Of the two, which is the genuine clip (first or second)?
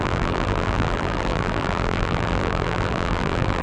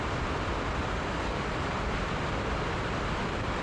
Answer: second